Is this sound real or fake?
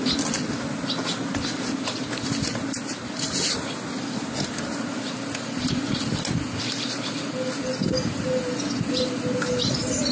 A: real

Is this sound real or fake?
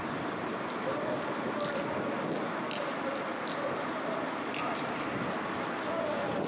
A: real